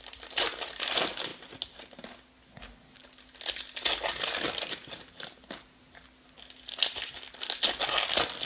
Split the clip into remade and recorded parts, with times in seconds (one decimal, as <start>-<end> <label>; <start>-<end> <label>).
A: 0.0-8.5 recorded